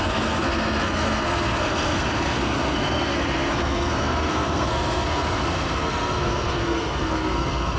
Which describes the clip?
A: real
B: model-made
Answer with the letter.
B